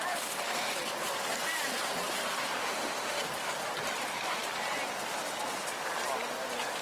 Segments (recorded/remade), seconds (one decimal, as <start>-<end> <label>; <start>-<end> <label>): 0.0-2.6 recorded; 2.6-3.2 remade; 3.2-6.8 recorded